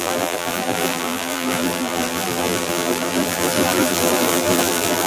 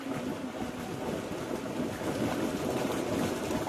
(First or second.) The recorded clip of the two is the second